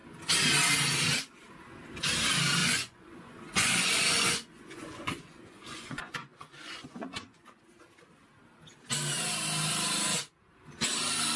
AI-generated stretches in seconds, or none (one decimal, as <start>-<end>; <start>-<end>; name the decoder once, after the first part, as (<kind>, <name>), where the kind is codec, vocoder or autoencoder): 2.6-7.6 (vocoder, Vocos)